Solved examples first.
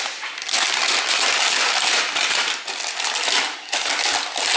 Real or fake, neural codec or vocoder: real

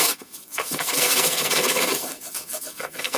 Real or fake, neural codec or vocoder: fake, codec, SNAC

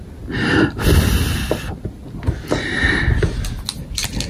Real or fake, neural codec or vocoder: real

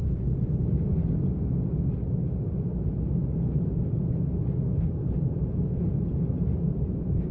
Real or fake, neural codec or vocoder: real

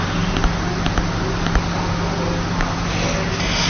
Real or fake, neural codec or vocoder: real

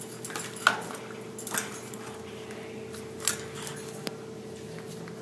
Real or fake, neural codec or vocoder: real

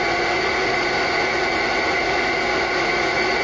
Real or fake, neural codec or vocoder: fake, vocoder, Vocos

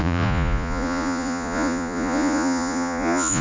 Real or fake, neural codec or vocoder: fake, vocoder, Vocos